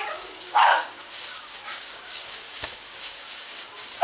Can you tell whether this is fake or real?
fake